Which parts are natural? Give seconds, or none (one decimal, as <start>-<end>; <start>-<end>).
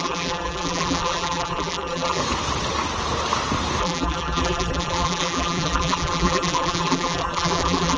2.2-3.8